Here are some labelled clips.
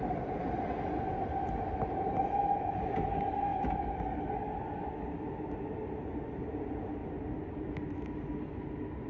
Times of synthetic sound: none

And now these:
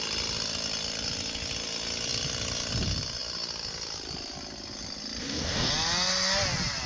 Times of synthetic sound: 5.2-5.7 (codec, DAC)

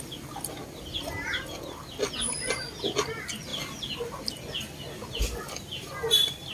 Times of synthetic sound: none

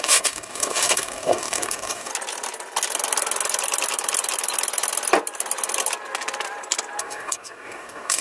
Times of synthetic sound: 0.0-2.1 (codec, DAC); 7.0-8.2

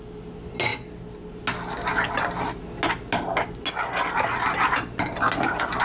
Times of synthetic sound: none

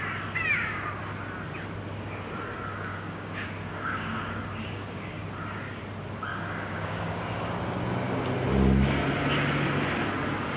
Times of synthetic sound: 0.5-1.0 (codec, DAC); 2.9-5.2; 6.3-7.2